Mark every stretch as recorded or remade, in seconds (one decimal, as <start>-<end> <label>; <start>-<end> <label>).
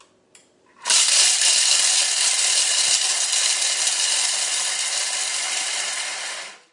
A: 0.0-0.4 recorded; 0.4-1.5 remade; 1.5-6.7 recorded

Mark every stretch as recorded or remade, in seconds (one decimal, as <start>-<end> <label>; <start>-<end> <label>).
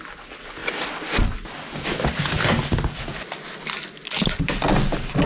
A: 0.0-0.6 recorded; 0.6-2.4 remade; 2.4-5.3 recorded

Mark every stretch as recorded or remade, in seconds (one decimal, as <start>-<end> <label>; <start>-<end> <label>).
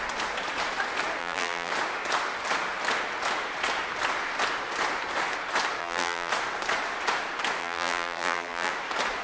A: 0.0-1.2 recorded; 1.2-1.7 remade; 1.7-5.8 recorded; 5.8-6.3 remade; 6.3-7.6 recorded; 7.6-8.7 remade; 8.7-9.2 recorded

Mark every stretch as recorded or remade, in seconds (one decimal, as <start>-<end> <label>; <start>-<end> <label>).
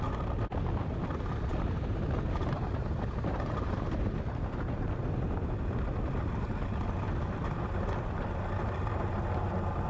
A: 0.0-1.5 recorded; 1.5-4.2 remade; 4.2-9.9 recorded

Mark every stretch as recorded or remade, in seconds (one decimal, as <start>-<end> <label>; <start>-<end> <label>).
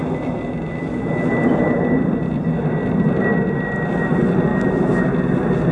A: 0.0-5.7 recorded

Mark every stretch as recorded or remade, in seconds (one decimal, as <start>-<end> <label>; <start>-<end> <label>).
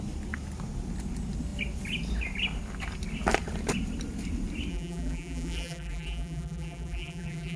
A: 0.0-4.7 recorded; 4.7-7.6 remade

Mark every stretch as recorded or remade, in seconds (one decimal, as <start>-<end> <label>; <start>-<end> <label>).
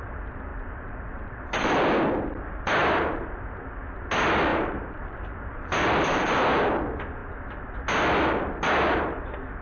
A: 0.0-0.5 recorded; 0.5-1.4 remade; 1.4-2.8 recorded; 2.8-3.6 remade; 3.6-4.5 recorded; 4.5-5.8 remade; 5.8-9.6 recorded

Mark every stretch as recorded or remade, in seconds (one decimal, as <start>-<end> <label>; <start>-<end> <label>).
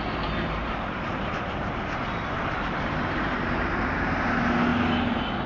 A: 0.0-0.6 recorded; 0.6-3.9 remade; 3.9-5.5 recorded